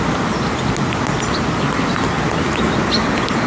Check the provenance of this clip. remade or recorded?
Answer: recorded